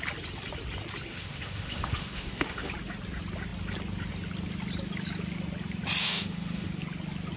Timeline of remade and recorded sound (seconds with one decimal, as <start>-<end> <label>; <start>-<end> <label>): 0.0-1.1 recorded; 1.1-2.7 remade; 2.7-6.0 recorded; 6.0-6.7 remade; 6.7-7.4 recorded